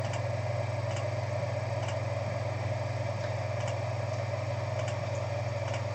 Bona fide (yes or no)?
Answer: yes